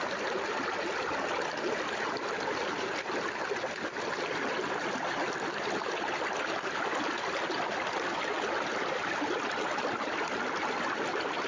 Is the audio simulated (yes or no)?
no